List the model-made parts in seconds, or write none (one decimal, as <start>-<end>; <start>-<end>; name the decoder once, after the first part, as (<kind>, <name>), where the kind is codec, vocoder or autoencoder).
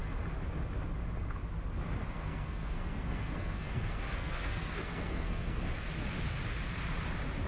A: 2.0-5.6 (codec, SNAC)